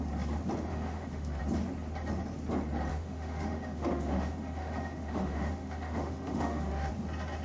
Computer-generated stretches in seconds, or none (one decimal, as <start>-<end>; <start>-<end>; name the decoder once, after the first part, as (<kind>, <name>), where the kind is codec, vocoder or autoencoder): 0.7-1.4 (autoencoder, DAC-VAE); 2.9-6.9